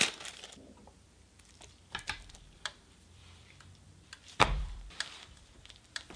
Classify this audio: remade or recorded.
remade